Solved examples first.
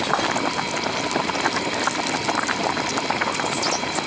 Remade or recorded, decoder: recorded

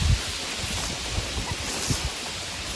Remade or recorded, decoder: recorded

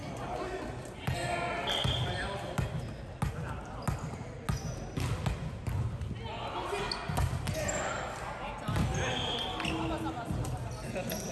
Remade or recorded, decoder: recorded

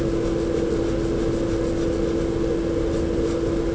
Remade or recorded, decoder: recorded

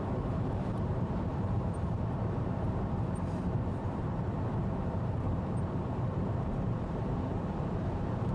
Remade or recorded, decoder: remade, vocoder, BigVGAN v2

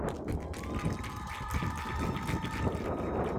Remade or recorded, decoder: recorded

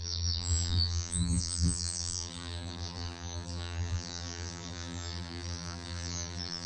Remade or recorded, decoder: remade, vocoder, BigVGAN v2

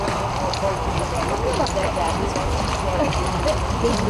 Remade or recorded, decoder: recorded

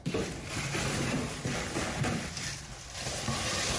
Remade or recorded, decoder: remade, vocoder, BigVGAN v2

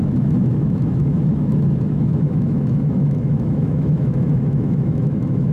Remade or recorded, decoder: remade, autoencoder, DAC-VAE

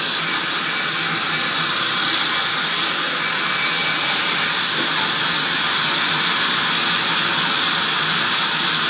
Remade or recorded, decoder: recorded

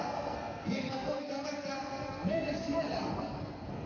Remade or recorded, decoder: remade, codec, SNAC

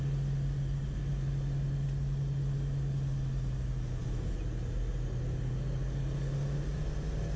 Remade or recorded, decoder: recorded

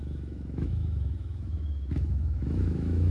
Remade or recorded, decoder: remade, autoencoder, DAC-VAE